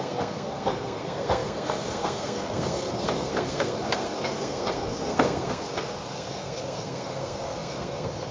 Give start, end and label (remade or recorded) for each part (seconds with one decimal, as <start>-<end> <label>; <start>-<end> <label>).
0.0-8.3 remade

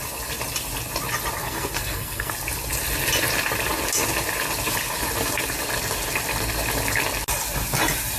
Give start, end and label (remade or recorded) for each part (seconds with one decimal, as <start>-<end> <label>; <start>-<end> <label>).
0.0-1.4 recorded; 1.4-2.3 remade; 2.3-8.2 recorded

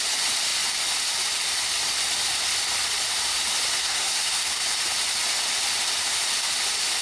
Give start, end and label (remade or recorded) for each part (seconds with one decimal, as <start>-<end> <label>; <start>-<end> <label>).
0.0-3.8 recorded; 3.8-4.6 remade; 4.6-7.0 recorded